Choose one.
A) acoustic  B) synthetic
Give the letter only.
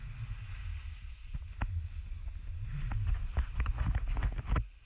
A